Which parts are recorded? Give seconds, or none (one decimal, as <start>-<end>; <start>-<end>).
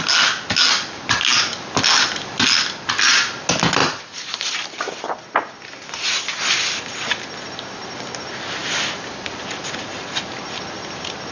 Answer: 0.0-3.8; 6.4-8.6; 9.8-11.3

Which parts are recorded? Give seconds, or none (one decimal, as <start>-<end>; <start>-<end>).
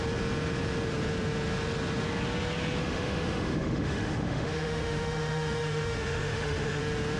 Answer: 0.0-2.8; 6.8-7.2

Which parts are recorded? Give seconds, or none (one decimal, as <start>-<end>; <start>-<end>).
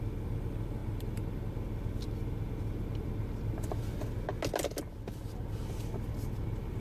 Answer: 0.0-6.8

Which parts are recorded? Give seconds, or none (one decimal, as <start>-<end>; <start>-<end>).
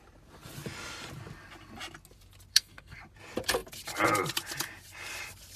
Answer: 0.0-2.5; 3.0-5.6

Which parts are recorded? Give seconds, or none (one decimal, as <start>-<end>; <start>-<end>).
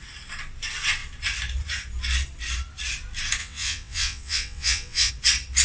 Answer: 0.0-3.4; 5.1-5.6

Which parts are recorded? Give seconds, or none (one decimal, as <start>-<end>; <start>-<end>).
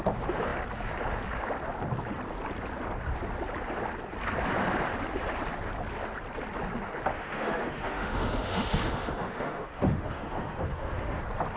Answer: 0.0-7.1; 11.2-11.6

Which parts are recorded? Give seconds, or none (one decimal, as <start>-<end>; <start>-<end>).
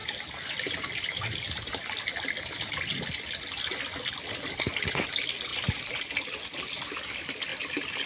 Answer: 0.0-5.5; 6.0-7.5